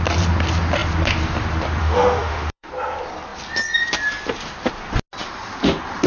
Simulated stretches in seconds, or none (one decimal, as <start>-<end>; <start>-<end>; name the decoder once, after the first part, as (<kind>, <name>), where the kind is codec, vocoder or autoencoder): 1.8-2.7 (autoencoder, DAC-VAE)

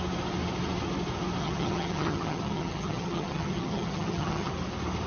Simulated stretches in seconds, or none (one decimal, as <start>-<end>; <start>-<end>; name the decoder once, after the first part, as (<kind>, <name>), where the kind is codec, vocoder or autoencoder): 1.4-4.5 (vocoder, HiFi-GAN)

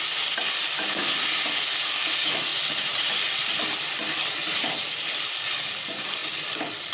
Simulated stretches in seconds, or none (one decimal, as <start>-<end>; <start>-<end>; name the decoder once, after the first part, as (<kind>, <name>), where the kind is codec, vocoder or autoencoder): none

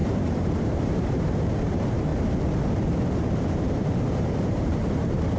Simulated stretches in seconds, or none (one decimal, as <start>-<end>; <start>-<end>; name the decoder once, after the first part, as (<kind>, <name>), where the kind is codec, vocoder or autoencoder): 0.0-2.1 (vocoder, BigVGAN v2); 3.2-5.4

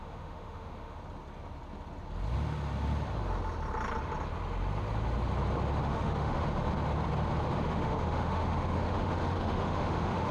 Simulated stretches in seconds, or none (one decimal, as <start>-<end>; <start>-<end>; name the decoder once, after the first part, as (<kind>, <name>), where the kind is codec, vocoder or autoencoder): 0.0-1.0 (autoencoder, DAC-VAE); 5.8-6.4; 7.7-10.3

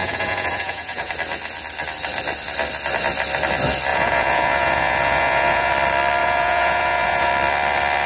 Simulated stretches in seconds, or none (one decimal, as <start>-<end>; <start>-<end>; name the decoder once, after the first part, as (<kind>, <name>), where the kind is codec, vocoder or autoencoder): 0.0-1.1 (vocoder, Vocos); 3.9-5.7; 6.2-7.3

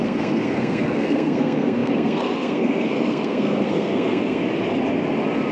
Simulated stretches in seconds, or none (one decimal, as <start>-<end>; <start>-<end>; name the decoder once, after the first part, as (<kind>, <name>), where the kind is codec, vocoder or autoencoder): 0.0-4.4 (codec, SNAC)